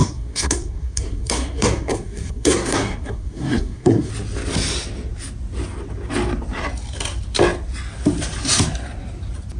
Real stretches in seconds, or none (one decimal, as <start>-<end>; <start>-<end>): 4.1-9.6